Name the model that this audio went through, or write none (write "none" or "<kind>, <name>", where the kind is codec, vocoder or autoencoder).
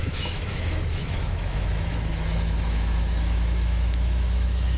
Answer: autoencoder, DAC-VAE